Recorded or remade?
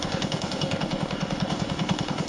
remade